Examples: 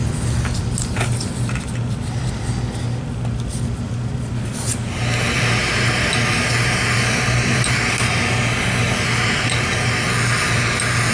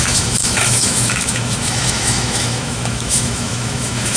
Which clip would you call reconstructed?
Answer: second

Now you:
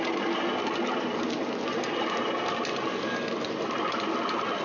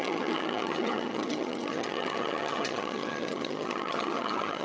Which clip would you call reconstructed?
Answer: second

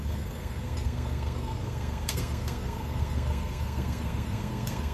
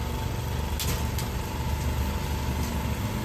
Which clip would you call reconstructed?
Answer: first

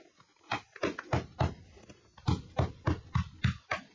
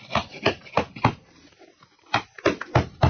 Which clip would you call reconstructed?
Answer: second